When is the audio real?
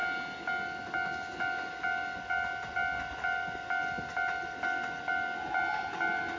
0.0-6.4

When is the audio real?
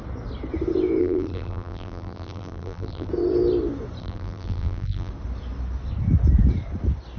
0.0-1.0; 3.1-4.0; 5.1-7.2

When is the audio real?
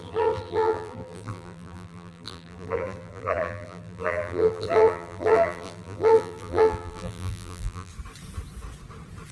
7.9-9.3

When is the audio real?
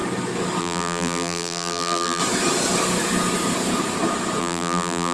0.0-0.6; 2.2-4.4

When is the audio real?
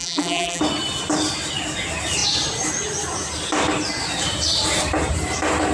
0.6-5.7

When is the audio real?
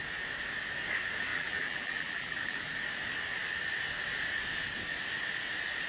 0.0-1.3; 2.7-5.9